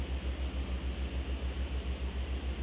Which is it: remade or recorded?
recorded